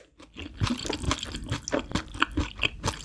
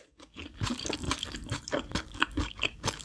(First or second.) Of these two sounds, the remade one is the second